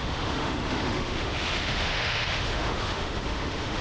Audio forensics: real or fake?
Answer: fake